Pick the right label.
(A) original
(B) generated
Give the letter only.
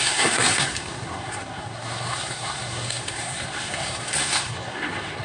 B